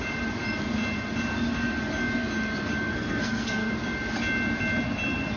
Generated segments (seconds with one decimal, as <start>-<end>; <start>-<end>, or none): 2.9-3.7